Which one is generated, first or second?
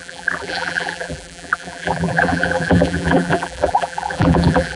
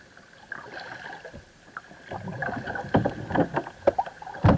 first